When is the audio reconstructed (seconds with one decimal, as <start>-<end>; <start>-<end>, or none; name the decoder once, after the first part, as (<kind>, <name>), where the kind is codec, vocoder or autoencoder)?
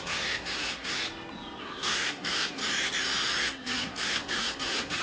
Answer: 0.0-1.0 (codec, SNAC); 1.6-2.6; 3.4-5.0